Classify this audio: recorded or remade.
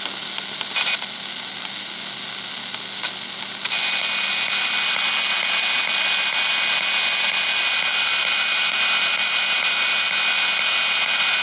recorded